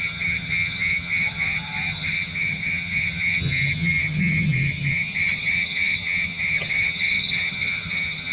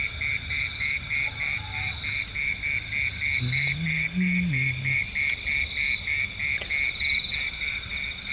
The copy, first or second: first